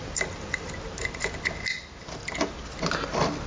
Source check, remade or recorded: recorded